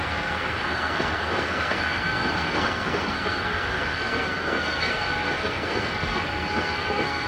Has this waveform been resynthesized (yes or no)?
yes